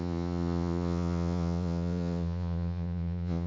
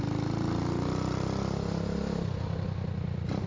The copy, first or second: first